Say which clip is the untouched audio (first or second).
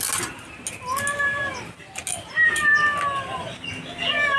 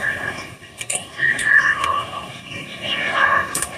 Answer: first